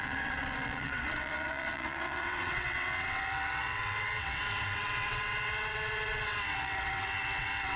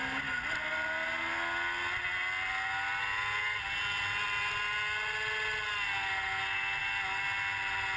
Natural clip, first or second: second